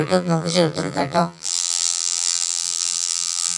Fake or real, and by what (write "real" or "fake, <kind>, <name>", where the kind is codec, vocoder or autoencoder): fake, vocoder, BigVGAN v2